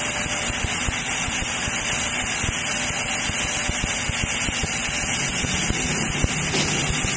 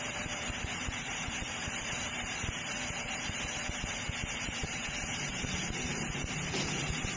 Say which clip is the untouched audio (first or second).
first